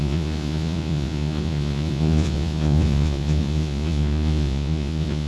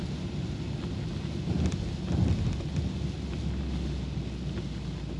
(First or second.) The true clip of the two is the second